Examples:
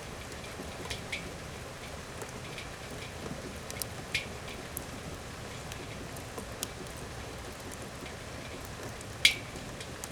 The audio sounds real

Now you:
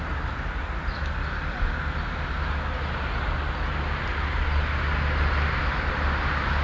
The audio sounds real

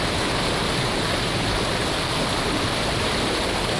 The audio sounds real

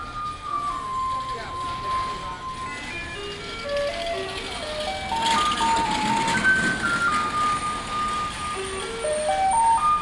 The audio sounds real